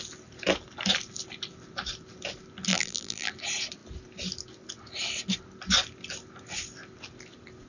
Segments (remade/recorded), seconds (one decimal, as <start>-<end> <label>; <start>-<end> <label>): 0.0-2.7 recorded; 2.7-3.3 remade; 3.3-7.7 recorded